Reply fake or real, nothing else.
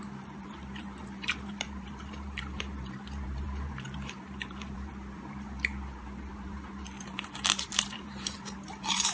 fake